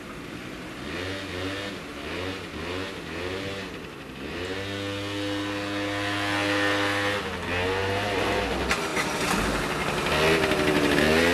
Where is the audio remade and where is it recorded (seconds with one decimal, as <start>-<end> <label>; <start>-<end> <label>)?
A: 0.0-8.9 recorded; 8.9-9.4 remade; 9.4-11.3 recorded